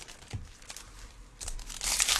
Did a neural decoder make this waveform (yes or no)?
no